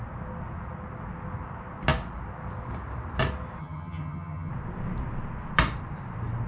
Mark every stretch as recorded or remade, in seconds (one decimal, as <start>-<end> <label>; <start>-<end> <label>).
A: 0.0-3.6 recorded; 3.6-4.5 remade; 4.5-6.5 recorded